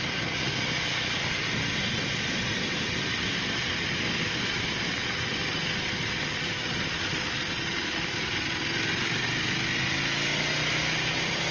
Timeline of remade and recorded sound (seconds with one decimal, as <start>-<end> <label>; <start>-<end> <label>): 0.0-11.5 recorded